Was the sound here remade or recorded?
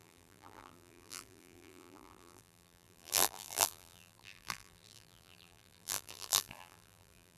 remade